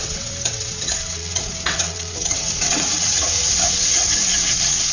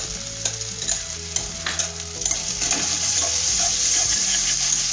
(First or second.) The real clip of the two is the second